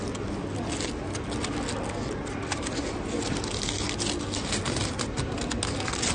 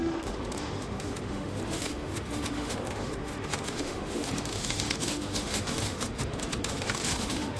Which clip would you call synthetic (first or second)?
second